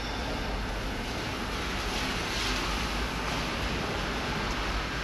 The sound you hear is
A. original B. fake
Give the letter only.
A